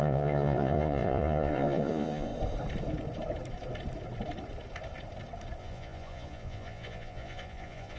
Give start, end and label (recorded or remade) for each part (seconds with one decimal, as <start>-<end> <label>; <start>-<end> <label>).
0.0-2.3 remade; 2.3-5.6 recorded; 5.6-8.0 remade